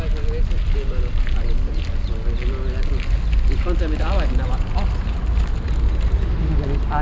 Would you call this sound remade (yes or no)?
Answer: no